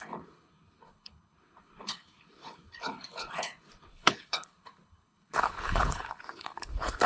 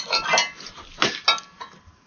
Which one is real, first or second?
second